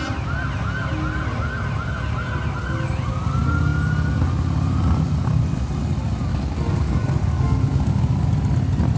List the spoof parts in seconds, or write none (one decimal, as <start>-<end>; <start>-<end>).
6.3-8.3